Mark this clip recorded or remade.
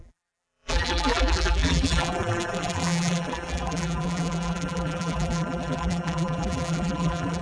remade